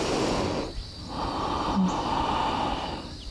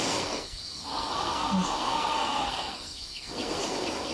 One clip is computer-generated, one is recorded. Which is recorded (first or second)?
first